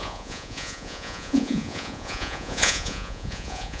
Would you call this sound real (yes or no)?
no